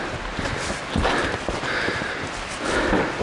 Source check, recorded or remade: recorded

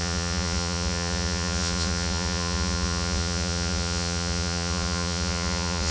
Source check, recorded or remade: remade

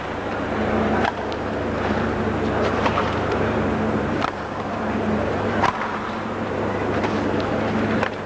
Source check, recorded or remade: remade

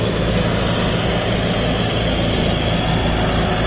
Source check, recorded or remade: recorded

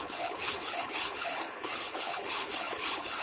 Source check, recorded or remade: remade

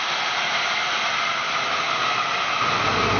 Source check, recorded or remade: recorded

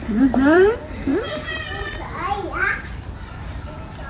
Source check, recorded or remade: remade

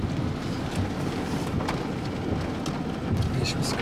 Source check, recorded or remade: recorded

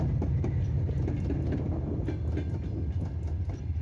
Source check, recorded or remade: recorded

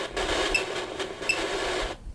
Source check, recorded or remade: recorded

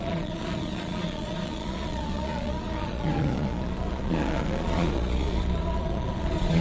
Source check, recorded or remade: remade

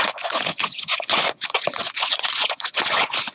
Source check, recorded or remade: remade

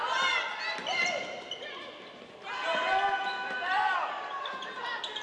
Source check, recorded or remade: recorded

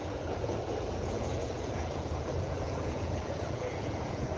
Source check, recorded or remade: remade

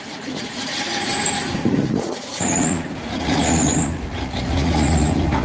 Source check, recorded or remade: remade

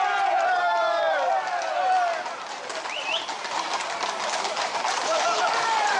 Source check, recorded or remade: remade